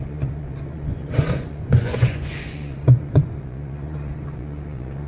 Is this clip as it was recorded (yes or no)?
no